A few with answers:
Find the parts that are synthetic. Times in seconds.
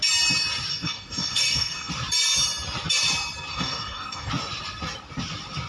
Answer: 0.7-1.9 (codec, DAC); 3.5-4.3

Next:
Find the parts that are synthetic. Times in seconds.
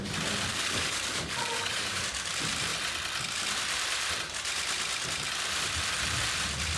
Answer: 0.5-2.0 (codec, DAC)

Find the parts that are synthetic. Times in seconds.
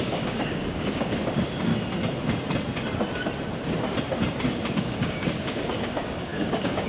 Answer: 0.0-1.7 (codec, DAC); 4.4-6.9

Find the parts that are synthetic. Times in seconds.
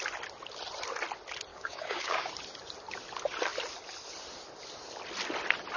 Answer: 1.5-2.3 (codec, DAC)